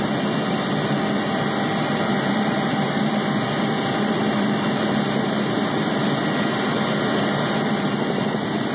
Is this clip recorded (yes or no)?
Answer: yes